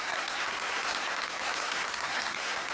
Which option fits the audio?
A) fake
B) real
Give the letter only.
A